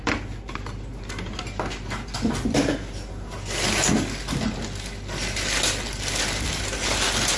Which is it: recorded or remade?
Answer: recorded